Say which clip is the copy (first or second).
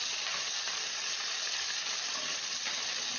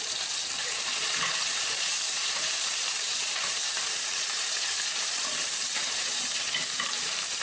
second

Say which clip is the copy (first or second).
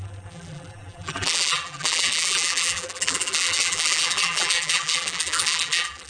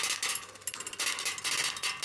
first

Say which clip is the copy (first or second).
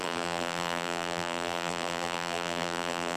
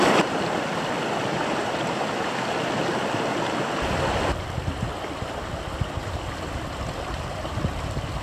first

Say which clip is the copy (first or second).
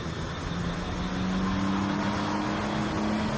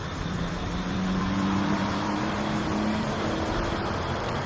second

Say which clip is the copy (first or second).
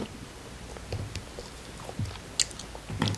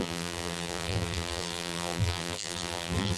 second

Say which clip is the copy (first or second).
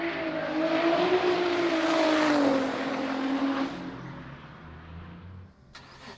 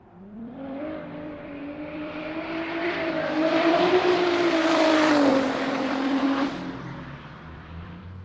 second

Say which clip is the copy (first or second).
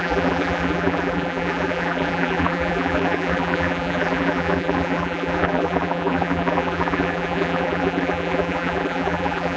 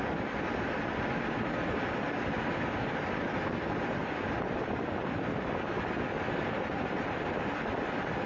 first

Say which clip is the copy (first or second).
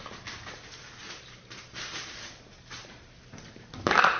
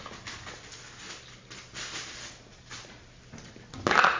first